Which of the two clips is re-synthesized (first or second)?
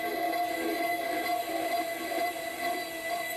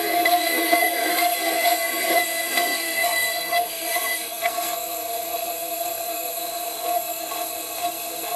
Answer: second